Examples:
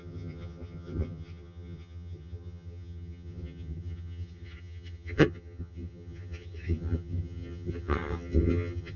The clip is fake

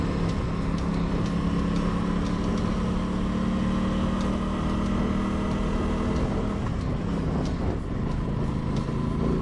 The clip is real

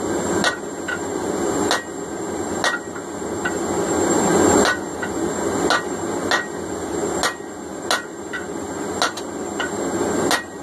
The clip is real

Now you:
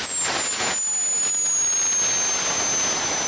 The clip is real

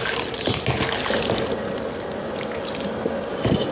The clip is real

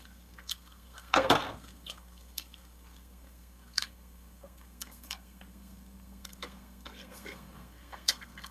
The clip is fake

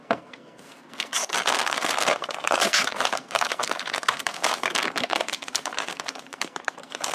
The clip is fake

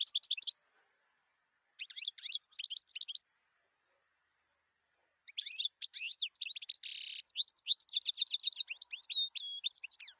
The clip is real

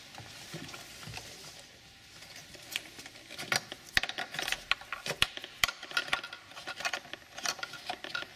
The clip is real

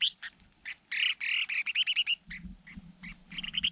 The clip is real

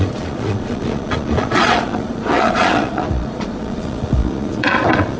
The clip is fake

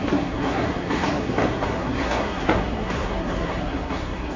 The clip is fake